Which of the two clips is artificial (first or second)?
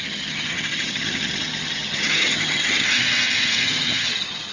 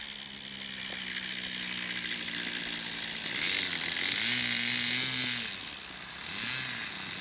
first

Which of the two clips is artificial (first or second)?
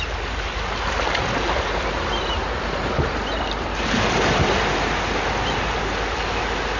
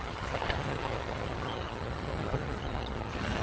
second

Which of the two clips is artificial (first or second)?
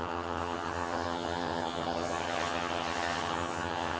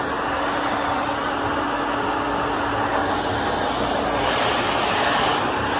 first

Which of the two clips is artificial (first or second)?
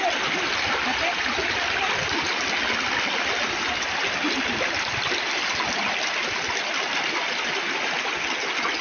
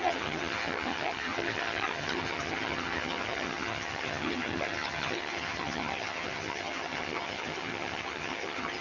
second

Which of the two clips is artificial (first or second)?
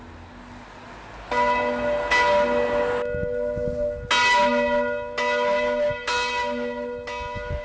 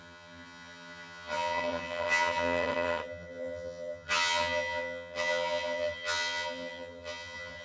second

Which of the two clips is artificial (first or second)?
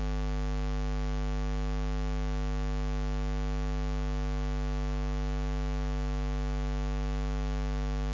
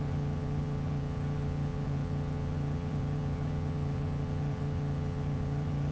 second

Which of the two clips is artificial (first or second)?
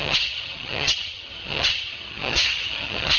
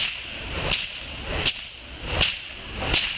first